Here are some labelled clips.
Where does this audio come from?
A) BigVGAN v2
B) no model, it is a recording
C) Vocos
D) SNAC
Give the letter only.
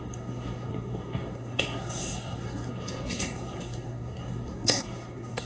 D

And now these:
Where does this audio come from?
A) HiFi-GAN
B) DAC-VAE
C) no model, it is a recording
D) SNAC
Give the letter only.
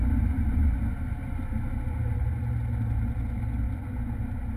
C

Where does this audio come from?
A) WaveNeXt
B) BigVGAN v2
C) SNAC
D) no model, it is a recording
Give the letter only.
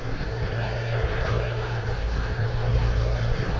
C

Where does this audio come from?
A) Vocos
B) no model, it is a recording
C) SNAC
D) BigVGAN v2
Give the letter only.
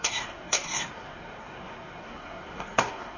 C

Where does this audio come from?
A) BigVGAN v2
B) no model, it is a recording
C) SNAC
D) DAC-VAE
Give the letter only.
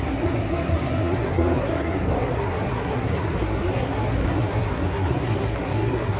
C